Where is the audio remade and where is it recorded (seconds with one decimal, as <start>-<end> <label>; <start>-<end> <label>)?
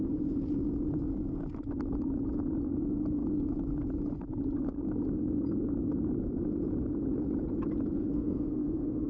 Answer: 0.0-8.0 recorded; 8.0-9.1 remade